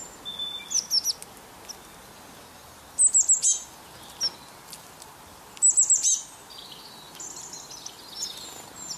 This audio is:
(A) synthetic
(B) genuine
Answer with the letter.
B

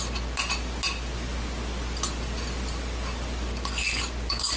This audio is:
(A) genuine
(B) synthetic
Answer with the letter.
A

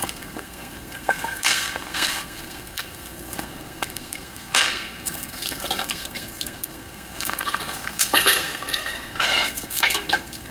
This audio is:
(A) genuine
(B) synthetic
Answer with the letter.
B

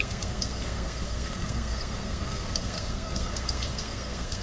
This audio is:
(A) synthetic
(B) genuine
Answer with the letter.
A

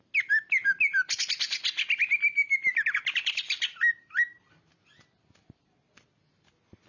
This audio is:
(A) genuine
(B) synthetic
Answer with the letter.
A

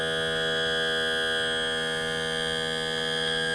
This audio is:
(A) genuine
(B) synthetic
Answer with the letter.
A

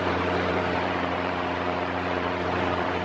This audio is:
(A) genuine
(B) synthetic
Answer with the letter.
B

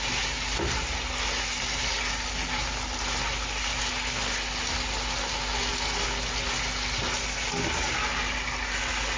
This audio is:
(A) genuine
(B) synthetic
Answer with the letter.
A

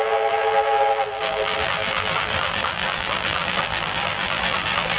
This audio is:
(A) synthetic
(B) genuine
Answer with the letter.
A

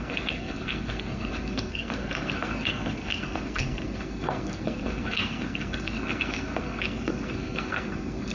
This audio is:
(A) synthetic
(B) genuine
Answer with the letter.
A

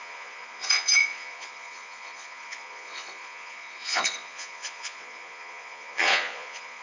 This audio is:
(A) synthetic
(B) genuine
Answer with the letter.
A